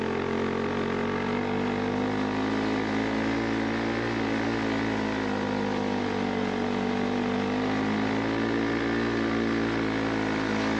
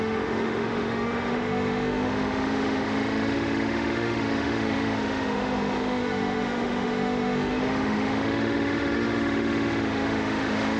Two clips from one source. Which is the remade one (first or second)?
second